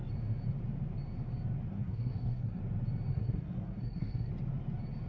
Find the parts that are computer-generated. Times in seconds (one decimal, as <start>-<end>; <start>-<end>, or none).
1.7-2.6; 3.1-4.3